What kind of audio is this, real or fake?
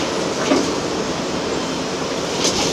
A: real